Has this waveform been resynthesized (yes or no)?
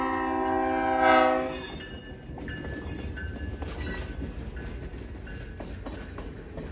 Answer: no